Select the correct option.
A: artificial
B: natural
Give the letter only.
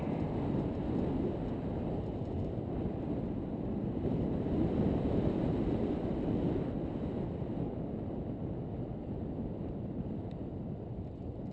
A